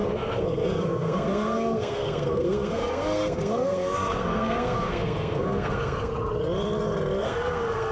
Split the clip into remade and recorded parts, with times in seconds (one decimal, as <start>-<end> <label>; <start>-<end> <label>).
0.0-6.1 remade; 6.1-7.2 recorded; 7.2-7.9 remade